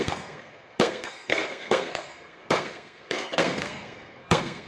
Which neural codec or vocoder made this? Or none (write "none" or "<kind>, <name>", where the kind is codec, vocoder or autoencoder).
codec, SNAC